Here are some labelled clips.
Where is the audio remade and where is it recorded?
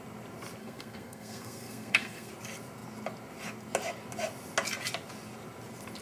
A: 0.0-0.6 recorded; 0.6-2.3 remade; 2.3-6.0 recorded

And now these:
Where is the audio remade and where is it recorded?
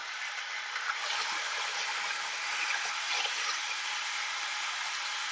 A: 0.0-5.3 recorded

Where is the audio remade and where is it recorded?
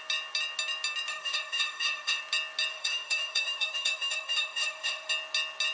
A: 0.0-1.1 recorded; 1.1-2.2 remade; 2.2-2.7 recorded; 2.7-5.1 remade; 5.1-5.7 recorded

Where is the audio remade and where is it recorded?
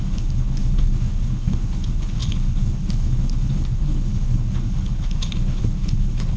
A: 0.0-6.4 remade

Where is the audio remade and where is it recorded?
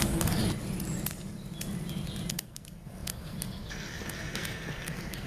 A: 0.0-0.4 remade; 0.4-2.3 recorded; 2.3-5.3 remade